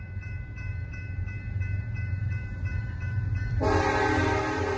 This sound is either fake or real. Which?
fake